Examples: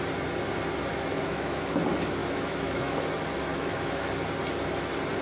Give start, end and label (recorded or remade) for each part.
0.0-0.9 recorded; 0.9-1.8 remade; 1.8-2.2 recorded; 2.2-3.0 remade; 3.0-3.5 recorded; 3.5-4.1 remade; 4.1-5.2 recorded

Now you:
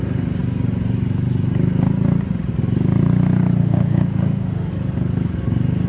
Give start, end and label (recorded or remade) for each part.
0.0-3.6 recorded; 3.6-4.7 remade; 4.7-5.9 recorded

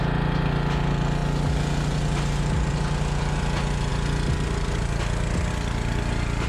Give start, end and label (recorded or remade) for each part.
0.0-6.5 recorded

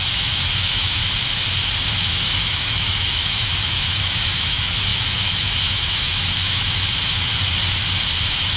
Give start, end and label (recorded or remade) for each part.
0.0-1.0 remade; 1.0-1.9 recorded; 1.9-7.3 remade; 7.3-8.2 recorded; 8.2-8.6 remade

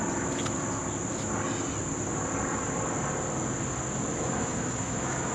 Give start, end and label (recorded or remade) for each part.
0.0-4.1 recorded; 4.1-5.3 remade